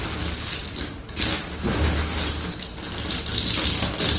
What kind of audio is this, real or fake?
real